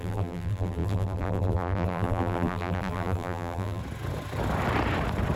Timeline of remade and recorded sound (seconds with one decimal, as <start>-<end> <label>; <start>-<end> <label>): 0.0-3.8 remade; 3.8-5.4 recorded